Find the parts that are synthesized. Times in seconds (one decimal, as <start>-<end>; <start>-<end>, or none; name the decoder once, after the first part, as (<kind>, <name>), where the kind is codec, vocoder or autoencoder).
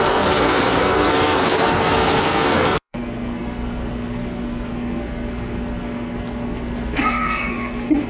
0.0-8.1 (codec, SNAC)